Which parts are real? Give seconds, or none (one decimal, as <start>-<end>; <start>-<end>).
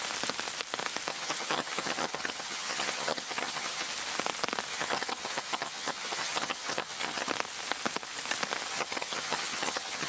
0.0-1.1; 3.9-4.7; 7.3-8.7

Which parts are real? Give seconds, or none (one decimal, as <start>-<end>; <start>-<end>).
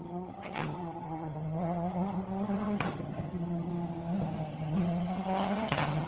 3.7-4.5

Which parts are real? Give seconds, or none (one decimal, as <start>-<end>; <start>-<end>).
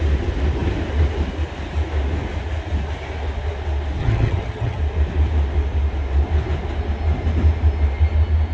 0.0-4.0; 4.8-8.5